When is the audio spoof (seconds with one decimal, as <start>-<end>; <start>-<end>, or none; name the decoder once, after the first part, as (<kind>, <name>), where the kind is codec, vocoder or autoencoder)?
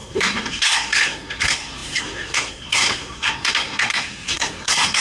0.0-5.0 (codec, SNAC)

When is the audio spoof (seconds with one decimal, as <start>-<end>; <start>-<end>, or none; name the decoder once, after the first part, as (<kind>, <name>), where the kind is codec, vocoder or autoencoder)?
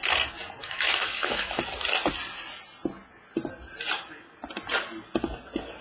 0.6-1.6 (autoencoder, DAC-VAE)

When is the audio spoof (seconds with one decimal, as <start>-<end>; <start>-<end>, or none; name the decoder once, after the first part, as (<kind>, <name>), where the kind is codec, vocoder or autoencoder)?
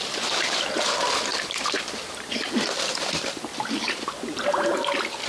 1.3-4.0 (vocoder, BigVGAN v2)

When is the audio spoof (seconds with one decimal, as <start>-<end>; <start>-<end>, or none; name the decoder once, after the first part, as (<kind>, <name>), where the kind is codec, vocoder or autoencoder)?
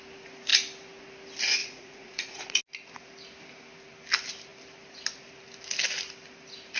1.6-2.6 (vocoder, Vocos)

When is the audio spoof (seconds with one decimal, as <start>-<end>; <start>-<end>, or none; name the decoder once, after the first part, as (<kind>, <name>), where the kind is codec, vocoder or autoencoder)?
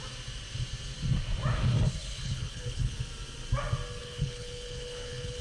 2.0-3.0 (codec, HILCodec); 4.0-5.4